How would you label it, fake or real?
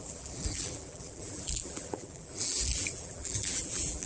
fake